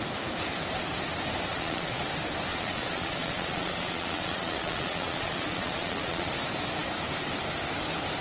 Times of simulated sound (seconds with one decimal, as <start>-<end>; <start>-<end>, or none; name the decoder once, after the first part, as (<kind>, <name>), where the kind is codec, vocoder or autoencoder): 1.5-2.0 (vocoder, Vocos); 2.5-6.3